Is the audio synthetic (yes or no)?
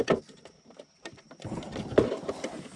no